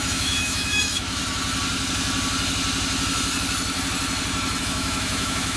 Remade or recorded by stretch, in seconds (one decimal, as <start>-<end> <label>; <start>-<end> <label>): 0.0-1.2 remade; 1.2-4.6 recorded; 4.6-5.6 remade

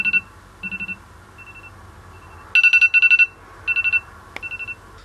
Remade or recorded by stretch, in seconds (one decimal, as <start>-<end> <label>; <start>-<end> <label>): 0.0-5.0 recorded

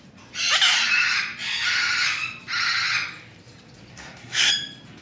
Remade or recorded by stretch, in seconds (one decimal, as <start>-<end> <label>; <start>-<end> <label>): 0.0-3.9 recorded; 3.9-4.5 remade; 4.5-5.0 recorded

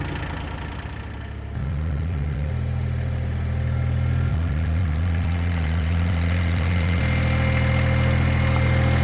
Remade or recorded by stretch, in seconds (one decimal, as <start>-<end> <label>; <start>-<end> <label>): 0.0-1.6 recorded; 1.6-2.5 remade; 2.5-4.3 recorded; 4.3-7.0 remade; 7.0-9.0 recorded

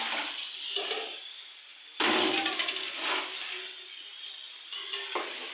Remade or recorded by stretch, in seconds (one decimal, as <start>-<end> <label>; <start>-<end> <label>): 0.0-1.7 recorded; 1.7-4.9 remade; 4.9-5.5 recorded

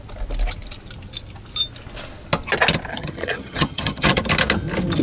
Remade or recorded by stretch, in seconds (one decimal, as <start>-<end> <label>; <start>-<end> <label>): 0.0-2.9 recorded; 2.9-4.2 remade; 4.2-5.0 recorded

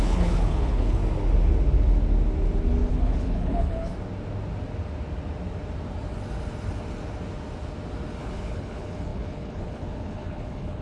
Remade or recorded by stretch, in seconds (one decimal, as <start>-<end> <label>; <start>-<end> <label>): 0.0-1.0 remade; 1.0-2.9 recorded; 2.9-3.9 remade; 3.9-8.2 recorded; 8.2-10.8 remade